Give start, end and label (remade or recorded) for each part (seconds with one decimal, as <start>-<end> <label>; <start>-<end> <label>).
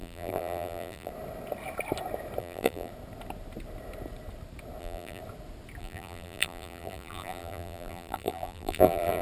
0.0-1.1 remade; 1.1-2.4 recorded; 2.4-2.9 remade; 2.9-4.8 recorded; 4.8-5.2 remade; 5.2-5.8 recorded; 5.8-9.2 remade